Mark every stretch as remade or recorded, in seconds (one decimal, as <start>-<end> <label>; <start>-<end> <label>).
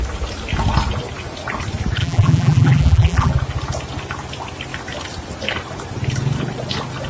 0.0-2.0 recorded; 2.0-3.3 remade; 3.3-7.1 recorded